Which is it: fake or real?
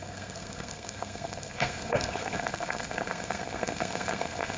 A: fake